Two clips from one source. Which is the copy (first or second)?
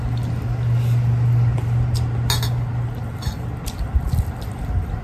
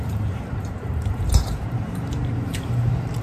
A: second